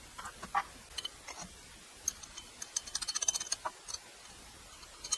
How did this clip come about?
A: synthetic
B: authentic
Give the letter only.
B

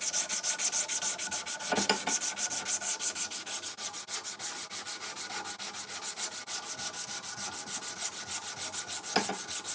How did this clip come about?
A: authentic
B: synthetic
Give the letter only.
A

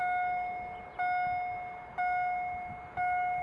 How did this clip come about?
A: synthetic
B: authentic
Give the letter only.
B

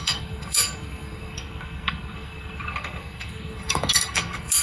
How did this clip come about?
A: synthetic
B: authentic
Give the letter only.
A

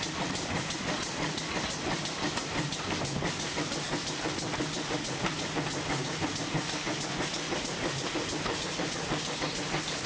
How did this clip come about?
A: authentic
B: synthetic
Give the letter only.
A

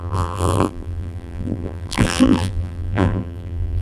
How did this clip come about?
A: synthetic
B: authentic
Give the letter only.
A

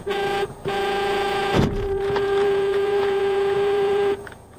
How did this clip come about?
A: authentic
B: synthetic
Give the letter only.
B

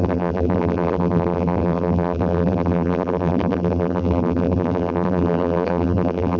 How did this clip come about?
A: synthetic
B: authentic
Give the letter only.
A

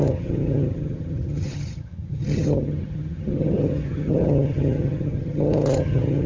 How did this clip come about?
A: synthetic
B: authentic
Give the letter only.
A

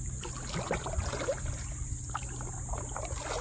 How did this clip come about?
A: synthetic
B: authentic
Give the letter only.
B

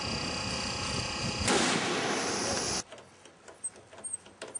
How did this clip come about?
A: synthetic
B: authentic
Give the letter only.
B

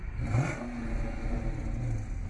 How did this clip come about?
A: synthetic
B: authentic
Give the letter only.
B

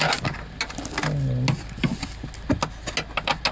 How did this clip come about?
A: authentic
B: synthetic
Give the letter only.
A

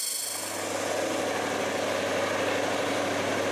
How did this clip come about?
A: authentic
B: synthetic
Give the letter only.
A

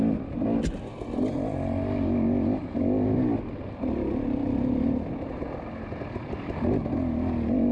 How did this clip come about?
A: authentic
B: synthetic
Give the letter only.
A